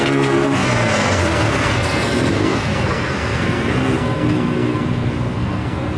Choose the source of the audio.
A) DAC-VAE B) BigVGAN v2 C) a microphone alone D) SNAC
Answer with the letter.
D